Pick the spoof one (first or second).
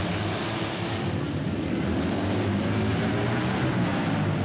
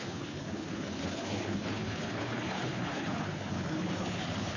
second